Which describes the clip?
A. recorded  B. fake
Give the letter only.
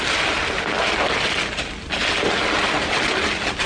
A